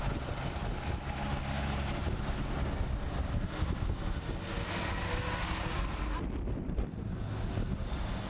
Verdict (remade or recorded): recorded